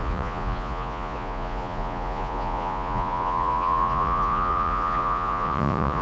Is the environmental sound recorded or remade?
remade